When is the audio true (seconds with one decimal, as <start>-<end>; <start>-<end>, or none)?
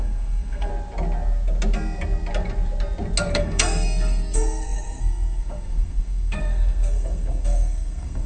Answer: 0.7-3.3